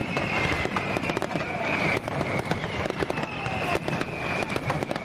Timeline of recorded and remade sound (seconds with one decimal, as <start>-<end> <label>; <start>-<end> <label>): 0.0-3.0 remade; 3.0-5.0 recorded